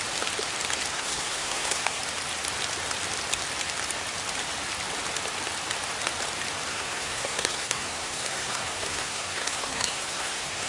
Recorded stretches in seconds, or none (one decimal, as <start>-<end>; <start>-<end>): 0.0-0.9; 2.0-6.7